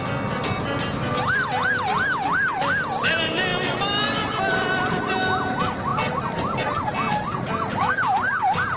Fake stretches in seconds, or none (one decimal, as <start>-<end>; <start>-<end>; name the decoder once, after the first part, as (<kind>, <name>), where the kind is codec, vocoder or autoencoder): none